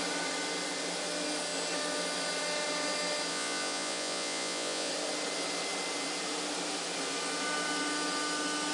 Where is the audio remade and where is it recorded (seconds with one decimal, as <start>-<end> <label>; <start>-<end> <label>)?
0.0-3.3 recorded; 3.3-4.9 remade; 4.9-8.7 recorded